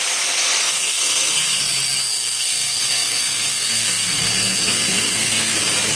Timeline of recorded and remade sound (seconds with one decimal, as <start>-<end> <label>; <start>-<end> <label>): 0.0-0.6 recorded; 0.6-1.6 remade; 1.6-2.0 recorded; 2.0-5.6 remade; 5.6-6.0 recorded